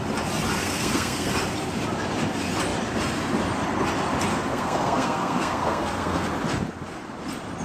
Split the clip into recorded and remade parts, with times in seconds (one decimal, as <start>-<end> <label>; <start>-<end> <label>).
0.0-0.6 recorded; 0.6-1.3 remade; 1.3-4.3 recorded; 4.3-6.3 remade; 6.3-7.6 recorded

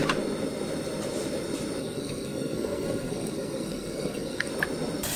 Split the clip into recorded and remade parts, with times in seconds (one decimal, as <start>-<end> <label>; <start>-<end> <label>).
0.0-1.8 recorded; 1.8-4.5 remade; 4.5-5.2 recorded

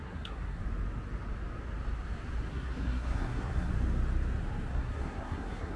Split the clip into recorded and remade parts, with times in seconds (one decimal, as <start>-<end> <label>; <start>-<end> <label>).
0.0-0.6 remade; 0.6-2.5 recorded; 2.5-3.7 remade; 3.7-4.7 recorded; 4.7-5.8 remade